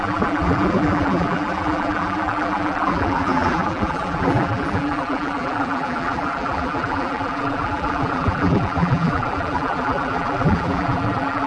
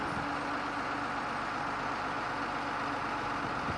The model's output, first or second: first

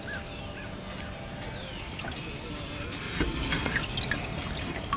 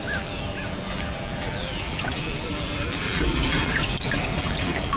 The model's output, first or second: second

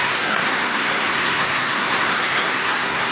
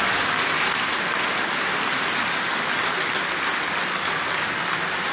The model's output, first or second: first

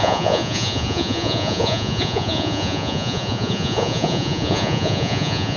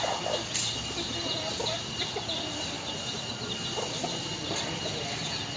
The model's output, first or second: first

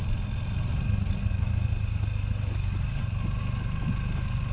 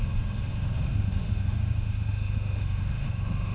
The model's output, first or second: second